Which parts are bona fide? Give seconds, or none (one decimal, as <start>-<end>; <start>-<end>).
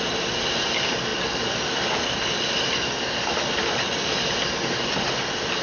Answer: 0.0-5.6